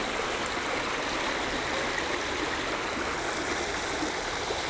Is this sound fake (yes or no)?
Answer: no